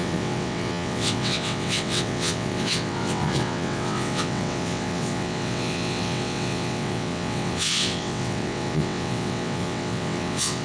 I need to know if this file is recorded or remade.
remade